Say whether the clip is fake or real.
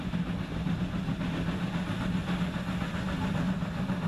real